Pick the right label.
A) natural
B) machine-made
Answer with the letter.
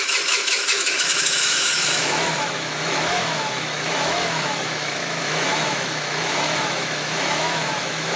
B